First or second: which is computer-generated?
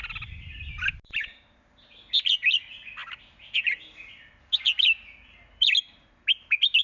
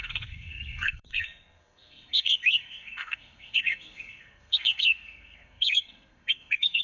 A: second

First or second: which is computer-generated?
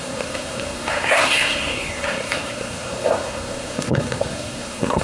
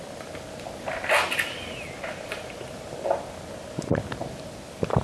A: first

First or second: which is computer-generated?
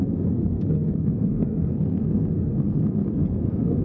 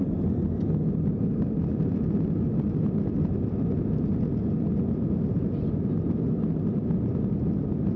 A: first